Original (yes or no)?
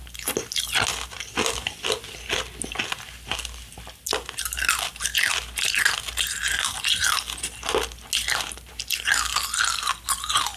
yes